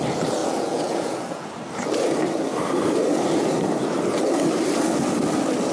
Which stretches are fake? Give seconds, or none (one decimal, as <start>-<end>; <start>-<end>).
0.4-1.5